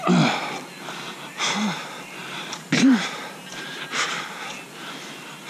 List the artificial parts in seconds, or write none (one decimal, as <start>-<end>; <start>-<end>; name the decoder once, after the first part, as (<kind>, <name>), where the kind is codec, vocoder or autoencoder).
2.2-3.8 (vocoder, BigVGAN v2)